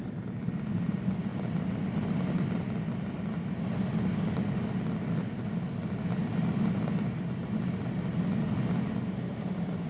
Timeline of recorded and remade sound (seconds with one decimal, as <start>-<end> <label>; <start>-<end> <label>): 0.0-9.9 recorded